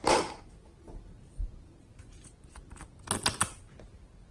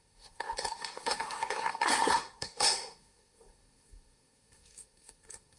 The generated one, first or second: second